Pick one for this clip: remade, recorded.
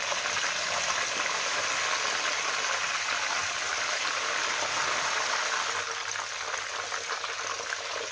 recorded